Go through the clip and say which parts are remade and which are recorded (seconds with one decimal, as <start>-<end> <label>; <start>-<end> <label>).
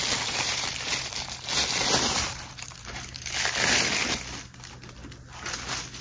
0.0-3.3 remade; 3.3-6.0 recorded